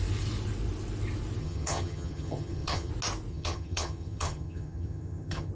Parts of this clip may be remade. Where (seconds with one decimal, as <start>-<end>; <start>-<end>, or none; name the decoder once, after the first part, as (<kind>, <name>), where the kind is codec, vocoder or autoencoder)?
1.4-2.9 (vocoder, HiFi-GAN); 3.3-5.5